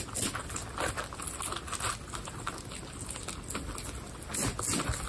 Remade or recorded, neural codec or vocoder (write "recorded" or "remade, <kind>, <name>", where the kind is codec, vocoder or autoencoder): recorded